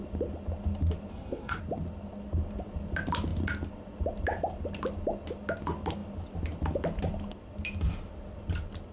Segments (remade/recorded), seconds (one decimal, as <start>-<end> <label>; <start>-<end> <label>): 0.0-1.1 recorded; 1.1-1.6 remade; 1.6-8.9 recorded